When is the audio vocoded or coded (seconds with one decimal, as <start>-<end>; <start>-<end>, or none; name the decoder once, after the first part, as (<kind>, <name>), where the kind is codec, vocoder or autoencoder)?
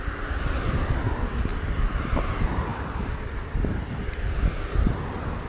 1.5-2.2 (vocoder, BigVGAN v2); 2.7-3.3